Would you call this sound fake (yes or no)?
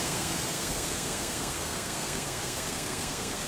yes